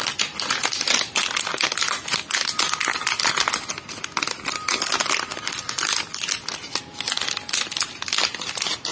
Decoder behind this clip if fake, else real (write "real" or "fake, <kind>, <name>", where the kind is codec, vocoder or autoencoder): real